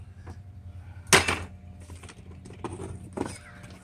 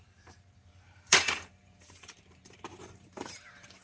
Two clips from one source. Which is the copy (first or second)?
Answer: second